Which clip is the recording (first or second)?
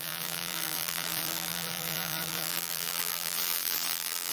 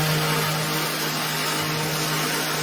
second